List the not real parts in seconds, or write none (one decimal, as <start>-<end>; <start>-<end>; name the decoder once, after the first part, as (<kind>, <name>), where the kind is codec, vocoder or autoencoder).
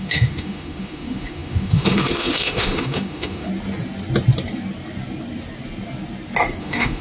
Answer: 0.0-3.5 (autoencoder, DAC-VAE); 6.6-7.0